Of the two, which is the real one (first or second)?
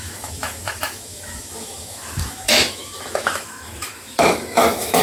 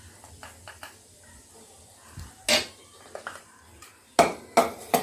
second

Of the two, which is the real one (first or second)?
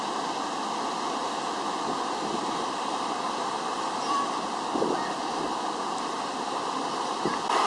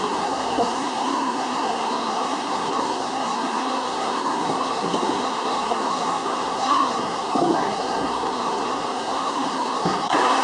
first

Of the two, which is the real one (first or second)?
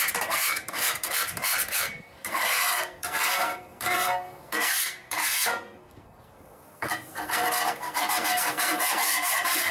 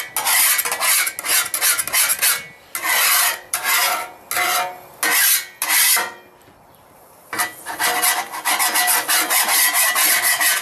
second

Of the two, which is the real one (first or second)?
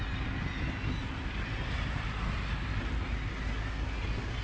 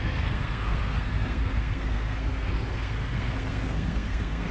first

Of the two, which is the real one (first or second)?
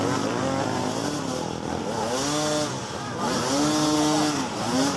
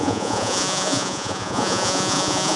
first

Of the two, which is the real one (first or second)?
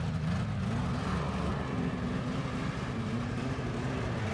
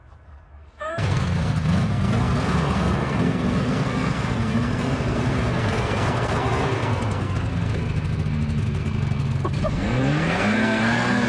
first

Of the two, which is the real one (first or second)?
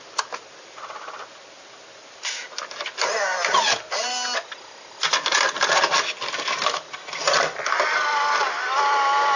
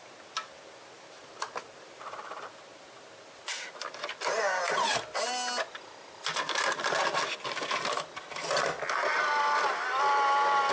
second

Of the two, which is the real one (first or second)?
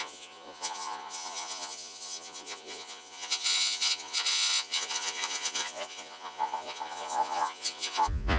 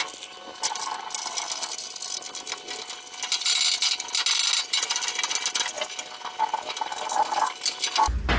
second